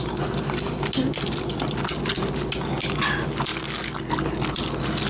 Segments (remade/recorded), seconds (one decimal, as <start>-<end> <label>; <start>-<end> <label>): 0.0-5.1 recorded